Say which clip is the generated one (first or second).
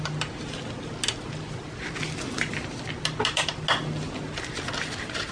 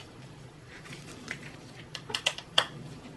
second